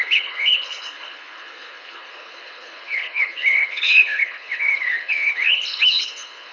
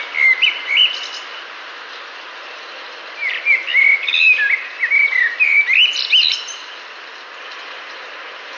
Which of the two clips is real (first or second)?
second